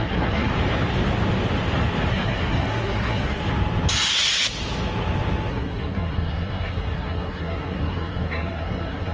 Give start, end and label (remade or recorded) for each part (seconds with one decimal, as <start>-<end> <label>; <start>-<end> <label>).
0.0-0.5 remade; 0.5-2.1 recorded; 2.1-3.4 remade; 3.4-5.5 recorded; 5.5-9.1 remade

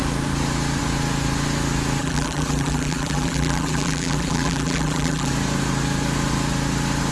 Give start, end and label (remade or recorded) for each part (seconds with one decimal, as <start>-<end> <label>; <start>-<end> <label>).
0.0-2.0 recorded; 2.0-5.3 remade; 5.3-7.1 recorded

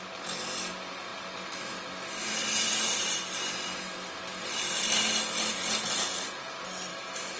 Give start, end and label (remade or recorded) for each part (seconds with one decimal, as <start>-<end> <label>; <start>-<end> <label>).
0.0-6.9 recorded; 6.9-7.4 remade

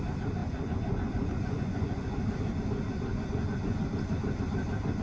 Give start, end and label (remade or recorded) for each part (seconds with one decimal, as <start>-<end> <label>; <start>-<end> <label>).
0.0-0.4 recorded; 0.4-2.2 remade; 2.2-3.1 recorded; 3.1-3.8 remade; 3.8-5.0 recorded

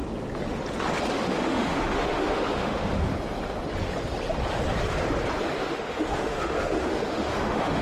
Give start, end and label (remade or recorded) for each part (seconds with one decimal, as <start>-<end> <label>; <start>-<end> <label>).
0.0-1.2 recorded; 1.2-3.1 remade; 3.1-5.6 recorded; 5.6-7.8 remade

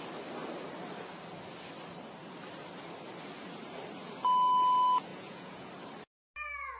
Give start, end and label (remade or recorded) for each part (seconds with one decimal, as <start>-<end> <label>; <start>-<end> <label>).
0.0-5.1 recorded; 5.1-5.7 remade; 5.7-6.8 recorded

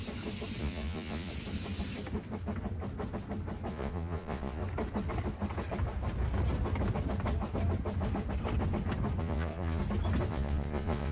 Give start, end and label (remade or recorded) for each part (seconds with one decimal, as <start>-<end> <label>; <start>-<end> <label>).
0.0-0.6 recorded; 0.6-1.3 remade; 1.3-3.7 recorded; 3.7-4.6 remade; 4.6-9.2 recorded; 9.2-9.8 remade; 9.8-10.3 recorded; 10.3-11.1 remade

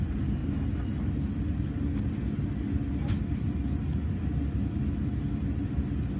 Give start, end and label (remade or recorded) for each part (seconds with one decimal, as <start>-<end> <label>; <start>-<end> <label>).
0.0-6.2 recorded